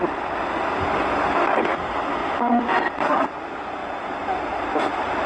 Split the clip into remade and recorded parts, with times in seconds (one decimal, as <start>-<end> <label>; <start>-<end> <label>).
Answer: 0.0-2.2 recorded; 2.2-3.2 remade; 3.2-5.3 recorded